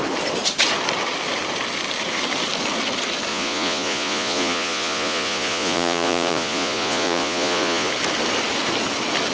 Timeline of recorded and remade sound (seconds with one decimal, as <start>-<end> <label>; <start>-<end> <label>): 0.0-3.3 recorded; 3.3-7.9 remade; 7.9-9.3 recorded

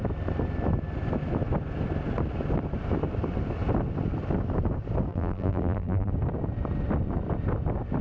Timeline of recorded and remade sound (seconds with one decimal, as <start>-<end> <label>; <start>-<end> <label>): 0.0-5.1 recorded; 5.1-6.1 remade; 6.1-8.0 recorded

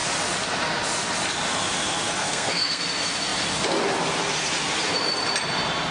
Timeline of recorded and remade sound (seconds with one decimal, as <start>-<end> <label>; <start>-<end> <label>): 0.0-2.2 recorded; 2.2-2.8 remade; 2.8-5.9 recorded

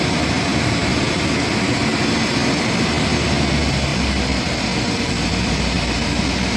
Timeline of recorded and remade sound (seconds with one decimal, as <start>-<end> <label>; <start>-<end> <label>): 0.0-3.9 recorded; 3.9-6.6 remade